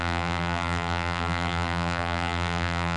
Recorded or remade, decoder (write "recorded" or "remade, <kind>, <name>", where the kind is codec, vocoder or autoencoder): remade, vocoder, BigVGAN v2